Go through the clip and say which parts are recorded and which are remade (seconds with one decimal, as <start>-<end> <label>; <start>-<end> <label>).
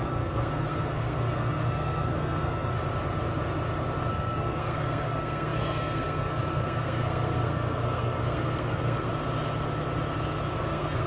0.0-2.7 remade; 2.7-4.1 recorded; 4.1-9.1 remade; 9.1-10.5 recorded; 10.5-11.1 remade